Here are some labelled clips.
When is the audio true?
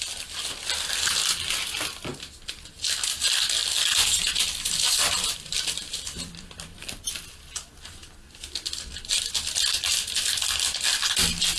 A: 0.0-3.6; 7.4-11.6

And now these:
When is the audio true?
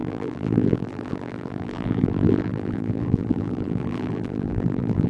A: none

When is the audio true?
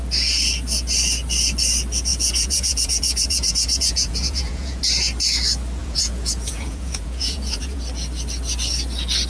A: 0.0-2.1; 4.8-5.8; 7.8-9.3